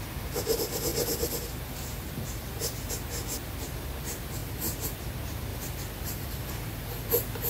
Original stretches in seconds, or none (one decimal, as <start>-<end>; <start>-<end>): 0.0-0.9; 2.9-5.5